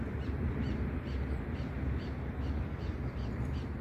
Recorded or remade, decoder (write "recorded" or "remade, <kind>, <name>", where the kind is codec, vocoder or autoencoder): remade, vocoder, BigVGAN v2